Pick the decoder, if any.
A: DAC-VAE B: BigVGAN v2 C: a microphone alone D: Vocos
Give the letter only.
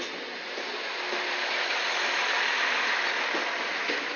C